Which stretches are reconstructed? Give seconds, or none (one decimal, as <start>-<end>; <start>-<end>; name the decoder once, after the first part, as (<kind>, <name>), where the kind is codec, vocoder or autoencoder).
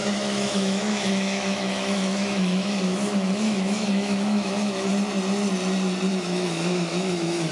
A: 0.0-4.9 (autoencoder, DAC-VAE); 6.1-7.5